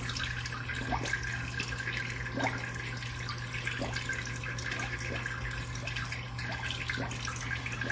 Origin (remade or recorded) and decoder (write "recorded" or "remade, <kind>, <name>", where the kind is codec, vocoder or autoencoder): recorded